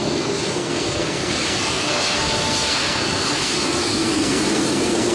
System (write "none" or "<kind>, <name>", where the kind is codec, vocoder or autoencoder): codec, SNAC